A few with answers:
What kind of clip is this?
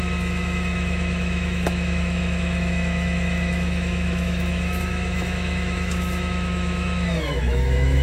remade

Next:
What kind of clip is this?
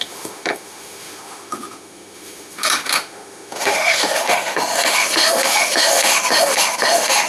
remade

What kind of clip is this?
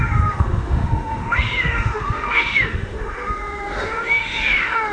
remade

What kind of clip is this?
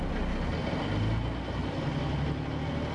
recorded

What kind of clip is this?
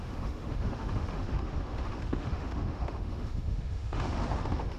remade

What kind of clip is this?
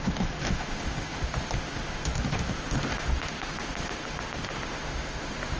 remade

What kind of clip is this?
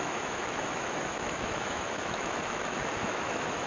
remade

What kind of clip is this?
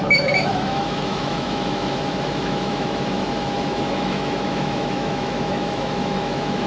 remade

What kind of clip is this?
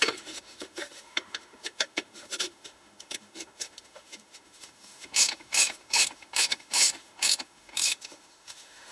remade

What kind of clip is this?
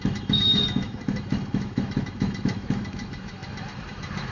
remade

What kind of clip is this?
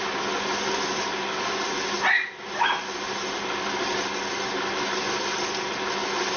recorded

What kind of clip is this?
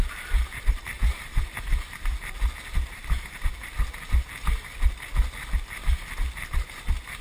recorded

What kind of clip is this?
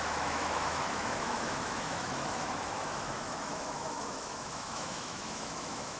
remade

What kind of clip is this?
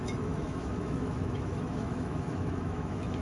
remade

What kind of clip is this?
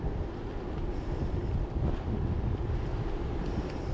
recorded